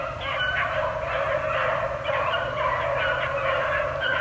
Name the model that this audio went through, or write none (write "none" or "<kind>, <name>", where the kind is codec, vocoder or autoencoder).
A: vocoder, BigVGAN v2